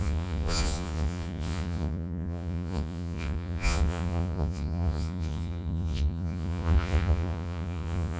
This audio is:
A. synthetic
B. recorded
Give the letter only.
A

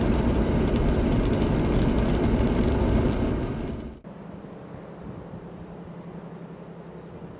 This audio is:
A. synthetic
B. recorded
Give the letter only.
B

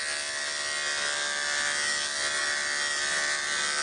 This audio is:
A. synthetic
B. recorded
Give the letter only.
B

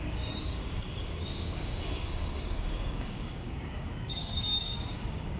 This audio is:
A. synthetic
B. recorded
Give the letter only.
A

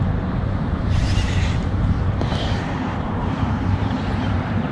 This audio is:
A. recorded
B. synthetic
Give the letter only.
B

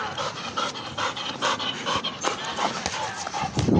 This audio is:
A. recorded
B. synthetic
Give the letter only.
A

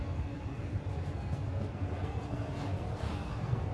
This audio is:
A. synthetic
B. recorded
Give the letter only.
A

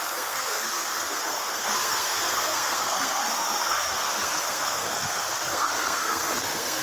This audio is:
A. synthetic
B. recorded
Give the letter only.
A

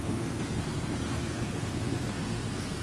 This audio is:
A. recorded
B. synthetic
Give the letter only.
B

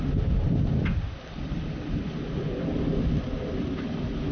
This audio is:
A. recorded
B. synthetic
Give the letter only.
A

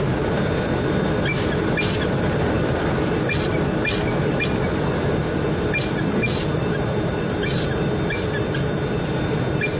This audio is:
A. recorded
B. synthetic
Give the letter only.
A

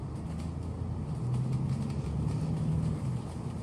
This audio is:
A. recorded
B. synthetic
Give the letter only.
A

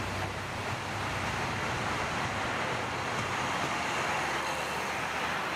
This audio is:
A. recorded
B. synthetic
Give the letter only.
A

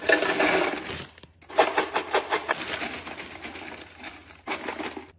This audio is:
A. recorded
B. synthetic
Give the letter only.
B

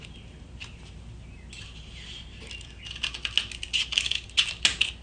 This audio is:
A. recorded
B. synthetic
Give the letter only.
A